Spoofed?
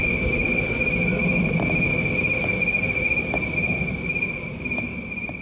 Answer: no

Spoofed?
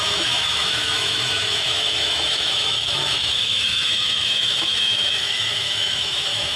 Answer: yes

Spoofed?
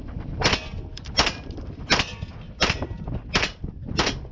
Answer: no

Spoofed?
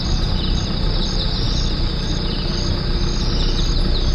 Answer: no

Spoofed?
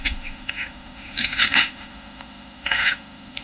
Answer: yes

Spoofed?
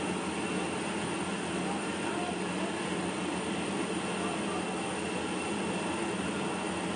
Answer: no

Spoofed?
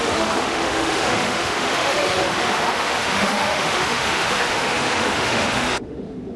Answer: yes